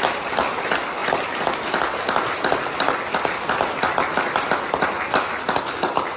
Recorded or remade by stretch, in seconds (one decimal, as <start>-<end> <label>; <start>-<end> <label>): 0.0-6.2 recorded